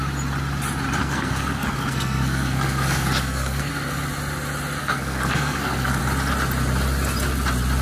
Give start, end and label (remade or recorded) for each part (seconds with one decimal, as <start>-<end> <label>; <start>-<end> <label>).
0.0-1.0 recorded; 1.0-3.7 remade; 3.7-4.8 recorded; 4.8-6.0 remade; 6.0-7.8 recorded